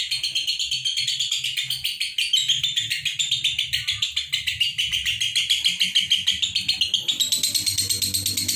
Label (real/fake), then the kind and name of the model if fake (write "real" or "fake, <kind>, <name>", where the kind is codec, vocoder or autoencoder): real